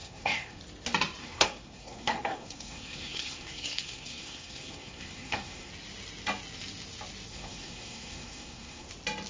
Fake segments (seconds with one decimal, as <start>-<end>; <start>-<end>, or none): 0.0-0.6; 1.2-5.7; 7.3-8.9